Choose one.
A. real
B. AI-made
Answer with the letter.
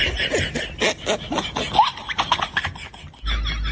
A